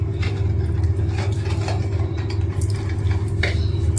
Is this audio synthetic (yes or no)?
no